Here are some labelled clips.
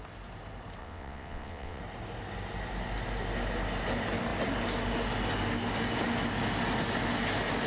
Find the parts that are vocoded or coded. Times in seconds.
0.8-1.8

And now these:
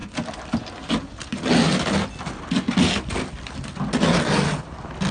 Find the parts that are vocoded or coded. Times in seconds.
none

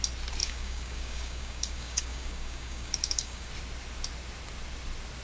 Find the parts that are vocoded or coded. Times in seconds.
0.4-3.5

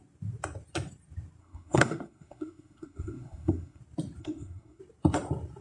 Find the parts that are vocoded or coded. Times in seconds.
1.4-3.8; 4.2-4.8

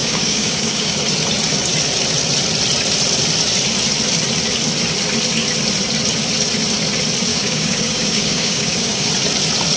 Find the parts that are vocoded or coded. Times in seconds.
0.0-1.0; 7.3-9.1

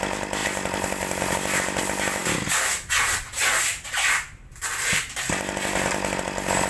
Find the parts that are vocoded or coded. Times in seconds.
none

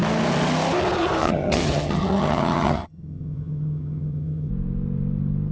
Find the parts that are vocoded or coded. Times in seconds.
1.2-4.5

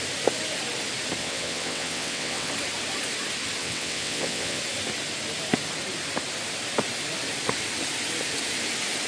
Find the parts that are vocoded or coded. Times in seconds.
1.2-2.5; 3.6-4.6